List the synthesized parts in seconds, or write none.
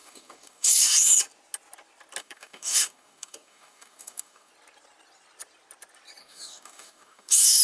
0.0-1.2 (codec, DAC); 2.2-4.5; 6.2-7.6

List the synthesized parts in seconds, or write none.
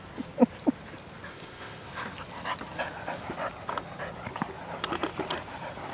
1.3-1.9 (autoencoder, DAC-VAE)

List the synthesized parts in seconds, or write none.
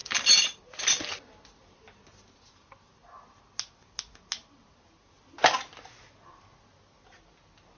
none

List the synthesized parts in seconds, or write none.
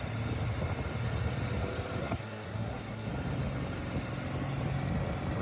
2.0-3.1 (codec, SNAC)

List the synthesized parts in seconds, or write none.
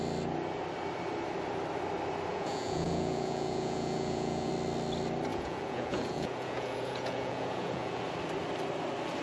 2.3-4.5 (vocoder, Vocos); 5.3-8.0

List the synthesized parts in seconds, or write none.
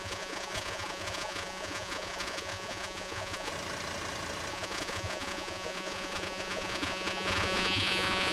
0.0-3.5 (vocoder, Vocos); 4.5-8.3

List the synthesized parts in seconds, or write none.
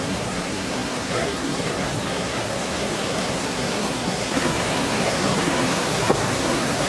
0.0-6.9 (codec, SNAC)